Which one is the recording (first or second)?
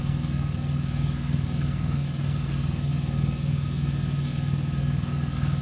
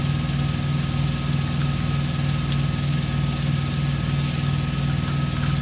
second